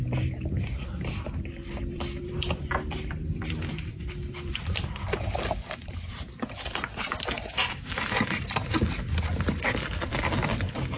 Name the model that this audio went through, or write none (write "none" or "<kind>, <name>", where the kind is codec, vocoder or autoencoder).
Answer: vocoder, BigVGAN v2